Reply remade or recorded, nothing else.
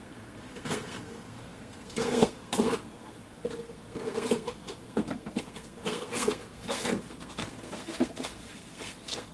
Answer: remade